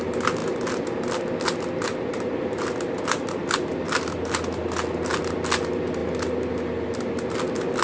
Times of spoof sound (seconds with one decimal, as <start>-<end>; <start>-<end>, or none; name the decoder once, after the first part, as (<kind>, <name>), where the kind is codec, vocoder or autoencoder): none